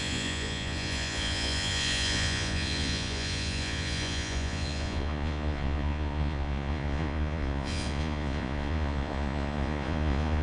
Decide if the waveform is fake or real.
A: fake